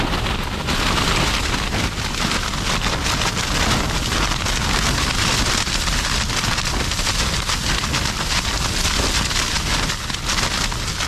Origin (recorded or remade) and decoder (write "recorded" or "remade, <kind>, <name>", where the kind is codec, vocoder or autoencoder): recorded